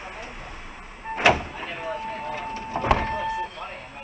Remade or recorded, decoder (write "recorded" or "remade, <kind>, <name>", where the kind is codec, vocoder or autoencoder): recorded